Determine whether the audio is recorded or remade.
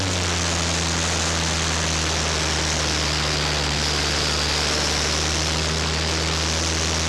recorded